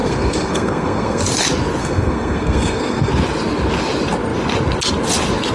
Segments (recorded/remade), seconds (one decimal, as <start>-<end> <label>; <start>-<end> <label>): 0.0-1.2 remade; 1.2-1.8 recorded; 1.8-3.1 remade; 3.1-5.5 recorded